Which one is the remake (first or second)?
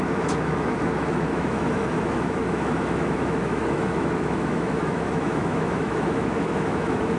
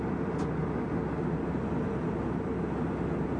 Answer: first